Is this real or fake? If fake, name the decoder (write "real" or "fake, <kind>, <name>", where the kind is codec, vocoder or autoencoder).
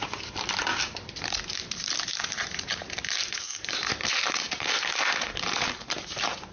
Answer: fake, vocoder, BigVGAN v2